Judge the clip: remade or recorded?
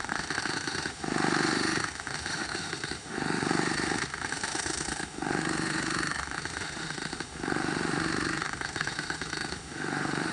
remade